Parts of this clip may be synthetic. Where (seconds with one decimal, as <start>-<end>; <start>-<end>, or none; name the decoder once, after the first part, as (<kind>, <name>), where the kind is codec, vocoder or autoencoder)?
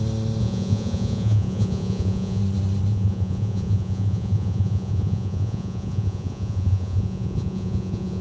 0.4-2.4 (vocoder, Vocos); 2.9-8.2